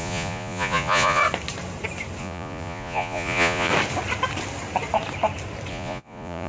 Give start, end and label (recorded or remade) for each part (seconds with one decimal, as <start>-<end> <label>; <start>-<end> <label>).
0.0-1.2 remade; 1.2-2.2 recorded; 2.2-3.7 remade; 3.7-5.7 recorded; 5.7-6.5 remade